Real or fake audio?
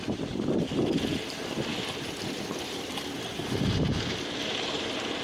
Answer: real